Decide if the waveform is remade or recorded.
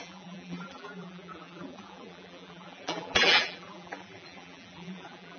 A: remade